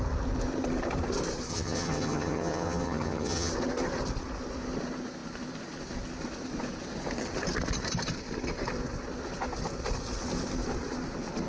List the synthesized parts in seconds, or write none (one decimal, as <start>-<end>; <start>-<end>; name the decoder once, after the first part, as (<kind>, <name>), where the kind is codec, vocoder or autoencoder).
1.5-3.5 (vocoder, HiFi-GAN)